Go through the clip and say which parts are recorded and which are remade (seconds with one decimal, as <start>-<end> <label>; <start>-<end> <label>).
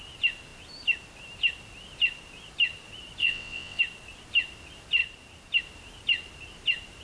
0.0-3.2 recorded; 3.2-3.8 remade; 3.8-7.0 recorded